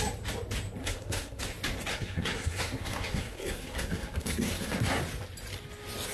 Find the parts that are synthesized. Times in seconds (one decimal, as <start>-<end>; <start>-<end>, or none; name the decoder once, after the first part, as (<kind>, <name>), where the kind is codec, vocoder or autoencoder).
0.8-1.4 (codec, SNAC); 1.9-5.0